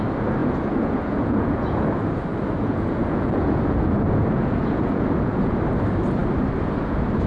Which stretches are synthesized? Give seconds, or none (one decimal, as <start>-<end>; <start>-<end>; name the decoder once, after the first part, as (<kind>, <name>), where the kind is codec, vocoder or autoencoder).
0.4-1.9 (vocoder, Vocos); 2.3-5.6